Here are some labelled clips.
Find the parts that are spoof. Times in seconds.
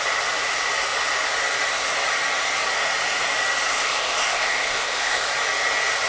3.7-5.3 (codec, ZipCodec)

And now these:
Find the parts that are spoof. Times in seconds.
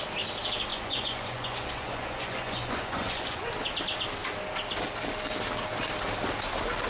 0.7-3.5 (vocoder, Vocos)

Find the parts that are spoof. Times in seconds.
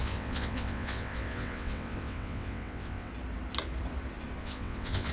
0.0-3.1 (vocoder, WaveNeXt); 4.4-5.1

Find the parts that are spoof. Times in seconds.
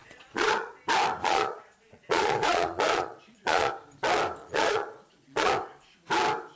0.0-0.7 (vocoder, Vocos); 1.2-3.7; 4.4-5.5